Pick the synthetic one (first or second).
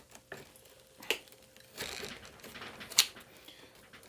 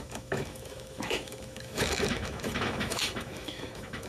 second